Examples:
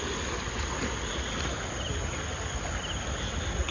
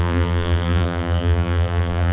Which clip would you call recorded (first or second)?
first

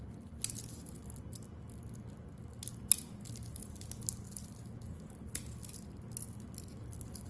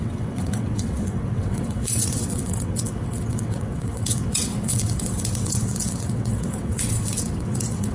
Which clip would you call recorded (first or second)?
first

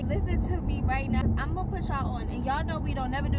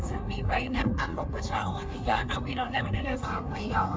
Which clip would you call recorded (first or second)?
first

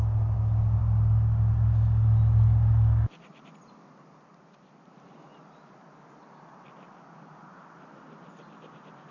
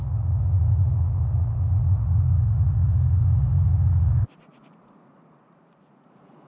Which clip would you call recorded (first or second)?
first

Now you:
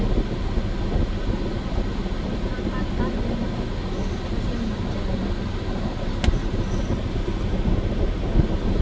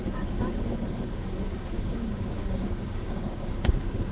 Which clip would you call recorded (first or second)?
first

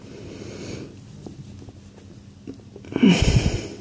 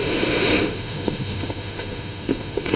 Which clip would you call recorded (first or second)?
first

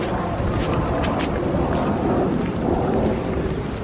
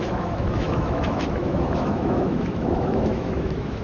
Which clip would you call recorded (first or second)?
first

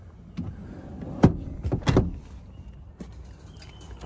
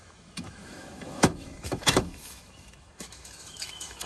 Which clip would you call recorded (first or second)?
first